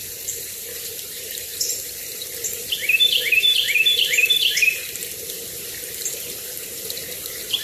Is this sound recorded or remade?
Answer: remade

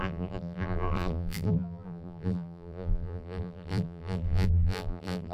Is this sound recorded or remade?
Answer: remade